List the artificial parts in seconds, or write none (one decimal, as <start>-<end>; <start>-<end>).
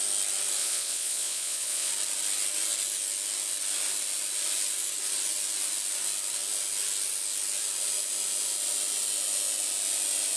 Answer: 0.6-1.9